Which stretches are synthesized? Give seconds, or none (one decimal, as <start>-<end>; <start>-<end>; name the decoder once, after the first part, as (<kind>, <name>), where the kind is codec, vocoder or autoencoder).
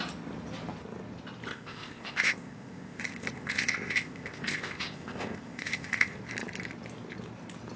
1.5-6.2 (codec, ZipCodec)